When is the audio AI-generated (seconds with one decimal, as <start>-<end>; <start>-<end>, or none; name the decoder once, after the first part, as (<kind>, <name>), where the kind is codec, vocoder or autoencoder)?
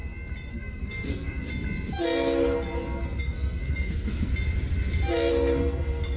0.5-1.5 (codec, SNAC); 3.2-4.3; 5.3-6.2